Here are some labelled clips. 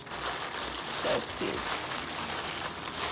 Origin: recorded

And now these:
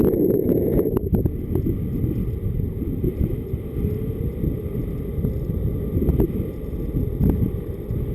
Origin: recorded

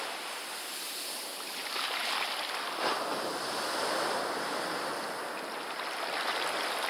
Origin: recorded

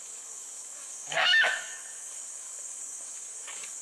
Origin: remade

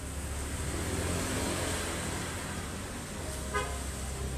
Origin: recorded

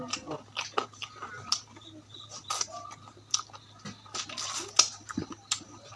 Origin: recorded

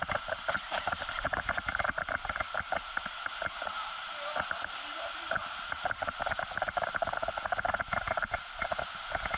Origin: recorded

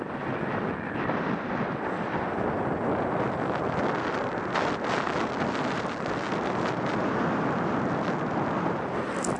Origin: recorded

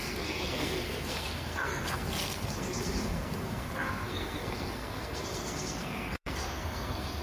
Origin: remade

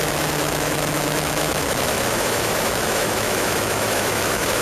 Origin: remade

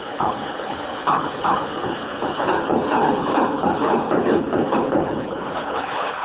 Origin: remade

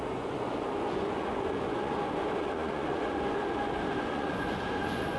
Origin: remade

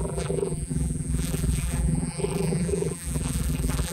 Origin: remade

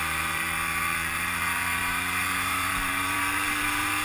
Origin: remade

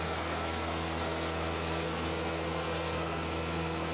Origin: remade